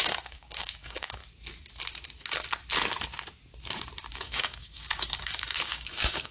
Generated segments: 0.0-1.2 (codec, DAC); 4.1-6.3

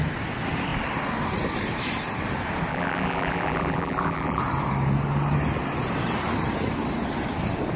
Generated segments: 2.7-4.4 (vocoder, BigVGAN v2)

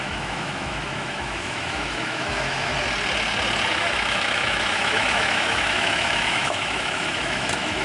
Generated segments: 0.0-2.7 (autoencoder, DAC-VAE); 3.7-7.8

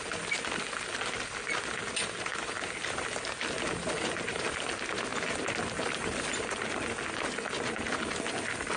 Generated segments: none

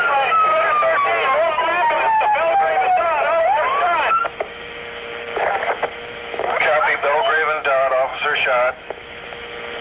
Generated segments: 0.0-0.5 (autoencoder, DAC-VAE); 4.2-9.8